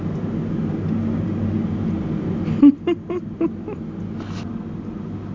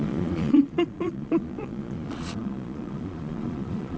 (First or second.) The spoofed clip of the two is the second